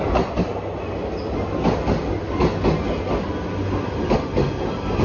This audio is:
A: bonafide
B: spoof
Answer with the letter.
A